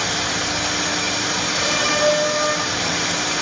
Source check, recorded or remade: recorded